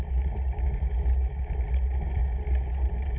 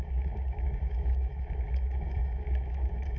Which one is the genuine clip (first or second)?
first